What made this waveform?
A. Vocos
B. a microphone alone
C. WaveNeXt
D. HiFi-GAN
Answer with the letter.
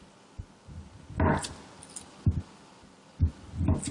B